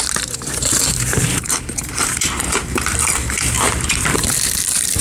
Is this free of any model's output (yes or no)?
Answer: no